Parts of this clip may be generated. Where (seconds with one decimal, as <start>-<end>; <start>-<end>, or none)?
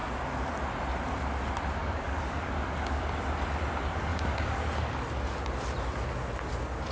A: 1.8-3.0; 4.1-4.6